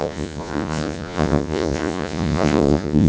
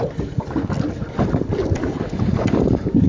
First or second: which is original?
second